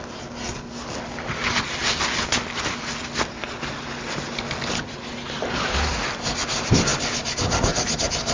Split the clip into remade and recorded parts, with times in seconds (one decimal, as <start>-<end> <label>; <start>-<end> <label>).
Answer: 0.0-8.3 recorded